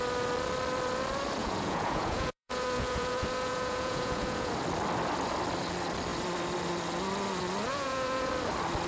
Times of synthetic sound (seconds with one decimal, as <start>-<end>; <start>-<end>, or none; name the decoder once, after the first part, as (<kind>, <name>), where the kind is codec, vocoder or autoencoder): 1.4-4.5 (vocoder, Vocos); 7.7-8.3